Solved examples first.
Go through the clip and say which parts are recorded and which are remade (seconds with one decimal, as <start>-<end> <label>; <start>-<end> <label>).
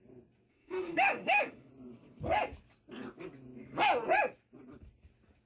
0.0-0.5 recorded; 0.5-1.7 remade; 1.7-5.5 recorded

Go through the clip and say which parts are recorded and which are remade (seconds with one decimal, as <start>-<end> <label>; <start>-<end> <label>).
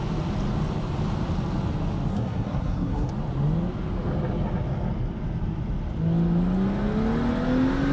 0.0-2.1 recorded; 2.1-3.1 remade; 3.1-7.9 recorded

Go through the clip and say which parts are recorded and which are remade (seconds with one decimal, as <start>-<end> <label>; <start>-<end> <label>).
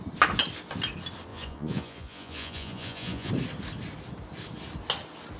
0.0-1.3 recorded; 1.3-3.3 remade; 3.3-5.4 recorded